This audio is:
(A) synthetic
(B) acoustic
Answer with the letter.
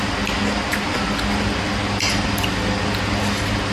B